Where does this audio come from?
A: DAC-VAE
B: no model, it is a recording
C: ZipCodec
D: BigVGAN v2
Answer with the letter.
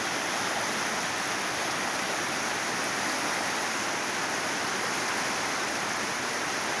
B